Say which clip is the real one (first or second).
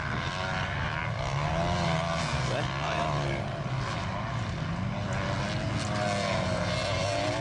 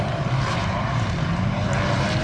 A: first